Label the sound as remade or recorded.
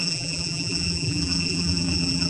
remade